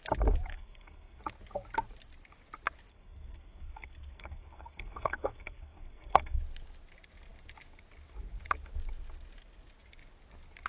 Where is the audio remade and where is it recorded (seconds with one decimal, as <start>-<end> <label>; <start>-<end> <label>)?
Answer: 0.0-0.5 recorded; 0.5-1.2 remade; 1.2-2.9 recorded; 2.9-6.4 remade; 6.4-10.7 recorded